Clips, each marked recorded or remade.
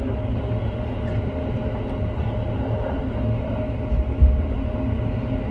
recorded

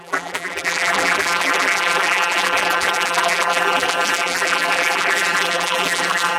remade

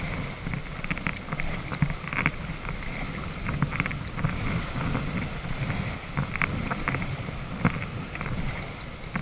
recorded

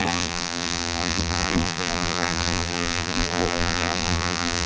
remade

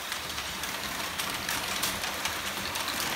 remade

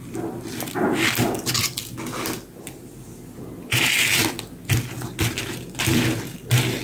recorded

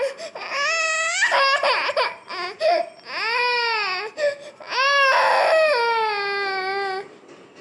recorded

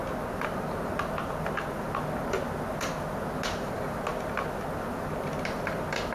recorded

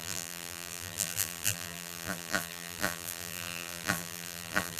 remade